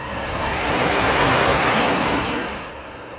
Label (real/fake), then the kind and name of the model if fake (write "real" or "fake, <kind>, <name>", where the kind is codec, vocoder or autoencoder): fake, codec, SNAC